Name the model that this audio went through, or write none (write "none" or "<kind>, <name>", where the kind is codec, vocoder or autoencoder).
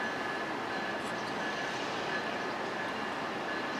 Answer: none